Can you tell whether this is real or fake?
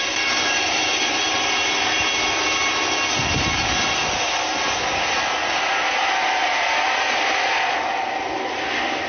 real